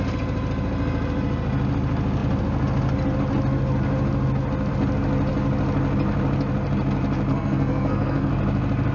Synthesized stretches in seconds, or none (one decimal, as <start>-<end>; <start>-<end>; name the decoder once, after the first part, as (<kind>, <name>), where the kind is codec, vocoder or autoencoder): 7.3-8.3 (codec, SNAC)